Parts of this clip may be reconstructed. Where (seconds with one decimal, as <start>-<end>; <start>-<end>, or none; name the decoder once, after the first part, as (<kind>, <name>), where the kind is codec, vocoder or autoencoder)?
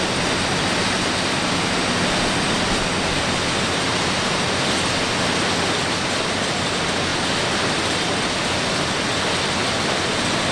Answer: none